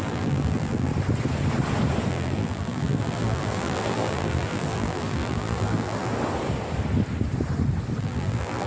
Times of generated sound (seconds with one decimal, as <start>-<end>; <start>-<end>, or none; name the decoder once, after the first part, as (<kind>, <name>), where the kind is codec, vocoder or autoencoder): 0.0-0.9 (vocoder, BigVGAN v2); 2.1-6.1; 8.0-8.7